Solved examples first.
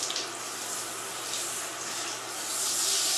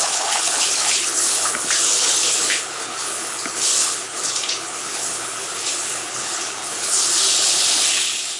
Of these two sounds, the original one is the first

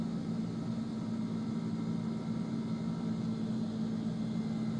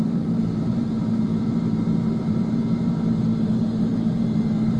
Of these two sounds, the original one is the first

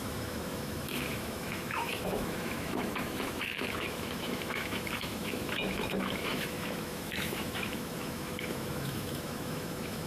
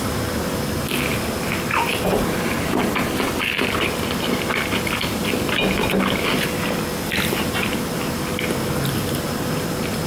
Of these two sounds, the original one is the second